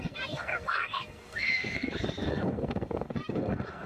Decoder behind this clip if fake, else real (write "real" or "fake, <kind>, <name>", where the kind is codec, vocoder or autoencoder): fake, codec, SNAC